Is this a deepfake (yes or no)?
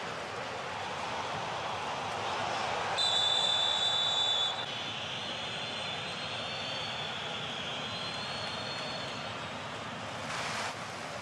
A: no